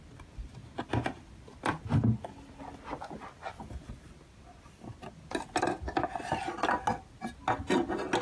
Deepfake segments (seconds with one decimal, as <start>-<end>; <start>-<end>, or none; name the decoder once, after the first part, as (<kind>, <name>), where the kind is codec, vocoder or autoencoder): none